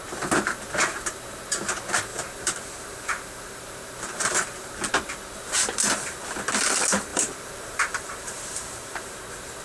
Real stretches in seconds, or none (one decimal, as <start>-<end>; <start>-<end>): 0.0-2.1; 4.9-7.1; 9.2-9.6